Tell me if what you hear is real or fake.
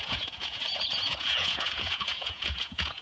fake